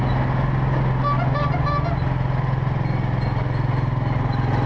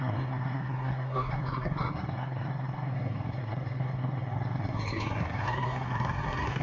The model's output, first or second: second